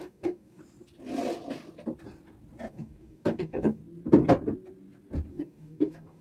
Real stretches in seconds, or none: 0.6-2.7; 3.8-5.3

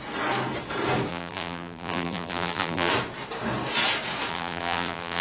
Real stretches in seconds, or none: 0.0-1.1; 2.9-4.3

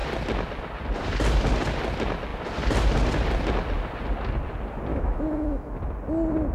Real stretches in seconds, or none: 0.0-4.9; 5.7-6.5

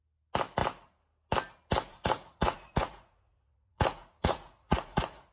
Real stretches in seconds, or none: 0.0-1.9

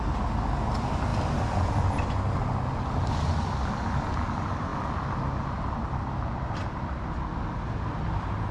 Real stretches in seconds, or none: 0.0-8.5

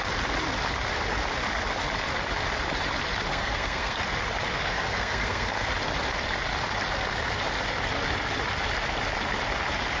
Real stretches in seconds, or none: 0.0-3.3; 4.0-4.5; 5.7-10.0

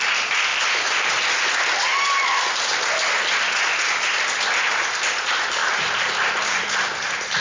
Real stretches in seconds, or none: 0.0-0.5; 1.2-5.6; 6.2-7.4